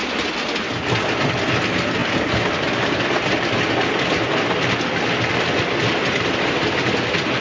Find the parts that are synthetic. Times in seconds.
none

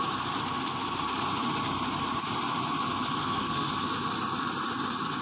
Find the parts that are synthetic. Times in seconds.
3.2-3.7 (codec, SNAC)

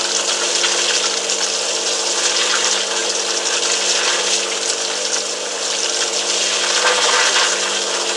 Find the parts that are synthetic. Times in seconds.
none